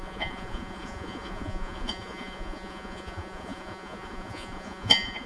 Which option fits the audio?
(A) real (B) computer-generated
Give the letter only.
B